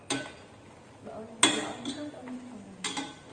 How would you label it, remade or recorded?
recorded